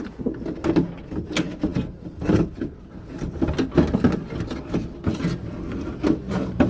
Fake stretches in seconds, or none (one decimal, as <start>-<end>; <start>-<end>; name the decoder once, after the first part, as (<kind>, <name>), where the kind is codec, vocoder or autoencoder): none